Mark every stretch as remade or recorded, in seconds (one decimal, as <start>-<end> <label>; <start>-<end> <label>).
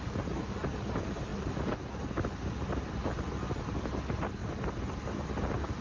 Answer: 0.0-5.8 recorded